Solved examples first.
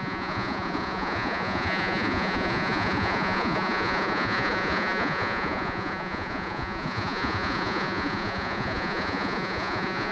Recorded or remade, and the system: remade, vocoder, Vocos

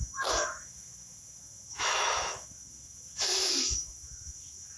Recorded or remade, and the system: remade, autoencoder, DAC-VAE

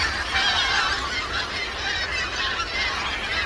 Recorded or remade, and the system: recorded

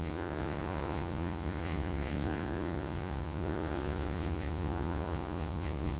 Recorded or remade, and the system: remade, vocoder, Vocos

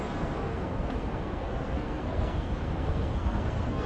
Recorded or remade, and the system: remade, codec, SNAC